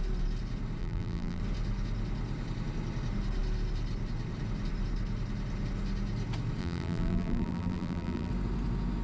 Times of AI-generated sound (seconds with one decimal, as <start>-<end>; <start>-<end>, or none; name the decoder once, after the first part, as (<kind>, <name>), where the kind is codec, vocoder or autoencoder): 0.8-1.4 (vocoder, BigVGAN v2); 6.6-8.3